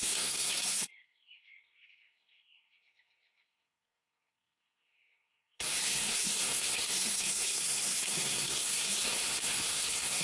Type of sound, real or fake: fake